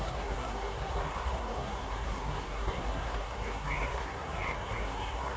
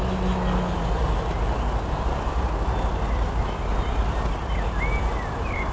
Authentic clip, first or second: second